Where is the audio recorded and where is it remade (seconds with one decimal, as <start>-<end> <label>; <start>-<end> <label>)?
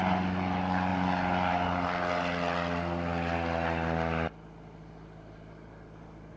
0.0-6.4 recorded